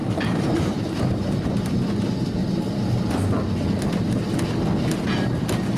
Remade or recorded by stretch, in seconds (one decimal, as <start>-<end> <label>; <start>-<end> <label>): 0.0-1.7 remade; 1.7-2.4 recorded; 2.4-3.1 remade; 3.1-5.8 recorded

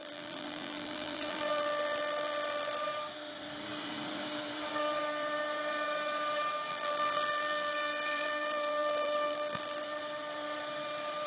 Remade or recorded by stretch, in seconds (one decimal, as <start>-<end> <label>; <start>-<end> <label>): 0.0-2.8 remade; 2.8-6.7 recorded; 6.7-9.8 remade; 9.8-11.3 recorded

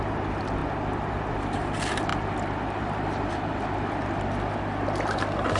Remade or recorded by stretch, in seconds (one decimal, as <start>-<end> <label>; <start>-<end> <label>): 0.0-0.6 remade; 0.6-1.3 recorded; 1.3-5.6 remade

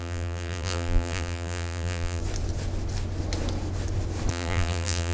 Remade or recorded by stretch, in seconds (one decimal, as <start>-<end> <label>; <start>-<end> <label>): 0.0-2.2 remade; 2.2-4.3 recorded; 4.3-5.1 remade

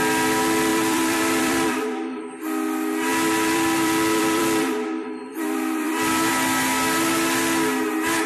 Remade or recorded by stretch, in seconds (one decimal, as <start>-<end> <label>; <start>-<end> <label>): 0.0-0.7 recorded; 0.7-2.2 remade; 2.2-3.1 recorded; 3.1-6.3 remade; 6.3-8.3 recorded

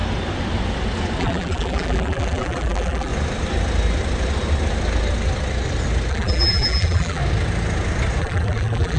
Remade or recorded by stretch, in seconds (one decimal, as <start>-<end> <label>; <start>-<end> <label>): 0.0-1.2 recorded; 1.2-3.1 remade; 3.1-6.1 recorded; 6.1-7.2 remade; 7.2-8.2 recorded; 8.2-9.0 remade

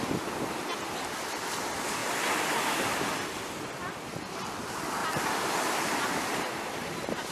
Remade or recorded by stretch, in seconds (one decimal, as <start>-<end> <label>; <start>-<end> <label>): 0.0-5.0 recorded; 5.0-6.3 remade; 6.3-7.3 recorded